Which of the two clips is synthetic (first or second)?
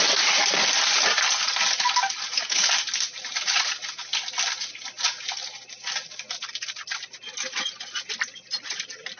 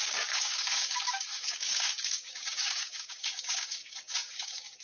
second